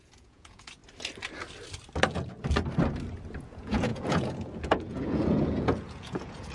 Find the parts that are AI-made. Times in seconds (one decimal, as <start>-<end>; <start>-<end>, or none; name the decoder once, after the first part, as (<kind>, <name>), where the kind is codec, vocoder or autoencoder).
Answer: 0.0-0.8 (vocoder, Vocos); 3.4-6.5